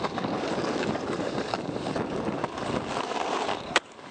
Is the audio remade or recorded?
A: remade